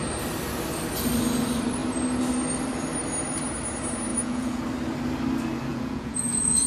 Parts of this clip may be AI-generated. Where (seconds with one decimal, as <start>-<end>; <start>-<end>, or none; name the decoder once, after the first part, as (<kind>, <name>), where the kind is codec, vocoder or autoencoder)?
4.1-4.6 (vocoder, Vocos); 5.7-6.7